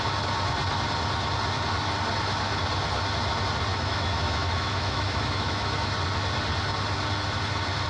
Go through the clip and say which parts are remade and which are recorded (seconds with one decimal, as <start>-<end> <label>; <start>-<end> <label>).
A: 0.0-3.7 recorded; 3.7-5.9 remade; 5.9-7.9 recorded